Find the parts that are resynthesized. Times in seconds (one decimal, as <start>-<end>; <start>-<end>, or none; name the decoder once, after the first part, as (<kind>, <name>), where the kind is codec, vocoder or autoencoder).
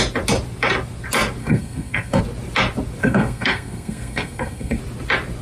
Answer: 1.4-2.2 (codec, SNAC); 3.0-4.8